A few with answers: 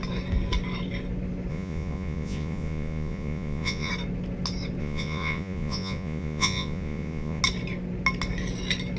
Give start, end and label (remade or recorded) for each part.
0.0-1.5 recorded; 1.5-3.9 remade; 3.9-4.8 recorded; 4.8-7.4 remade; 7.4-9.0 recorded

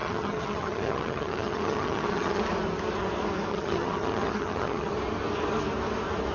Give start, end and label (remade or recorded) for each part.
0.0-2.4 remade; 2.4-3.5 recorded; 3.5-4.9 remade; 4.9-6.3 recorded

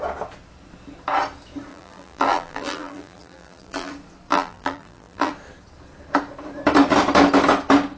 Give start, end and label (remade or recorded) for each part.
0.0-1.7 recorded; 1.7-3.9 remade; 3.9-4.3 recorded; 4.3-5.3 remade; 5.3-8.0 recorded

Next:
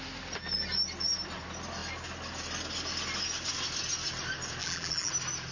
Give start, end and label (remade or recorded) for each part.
0.0-4.6 recorded; 4.6-5.1 remade; 5.1-5.5 recorded

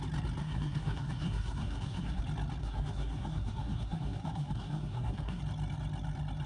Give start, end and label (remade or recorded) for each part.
0.0-0.4 recorded; 0.4-2.2 remade; 2.2-2.6 recorded; 2.6-5.4 remade; 5.4-6.5 recorded